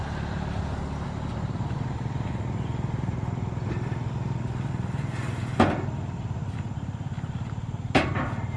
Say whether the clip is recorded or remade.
recorded